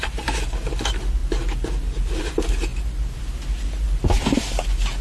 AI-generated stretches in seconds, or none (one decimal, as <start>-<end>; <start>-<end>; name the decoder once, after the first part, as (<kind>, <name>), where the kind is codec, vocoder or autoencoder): none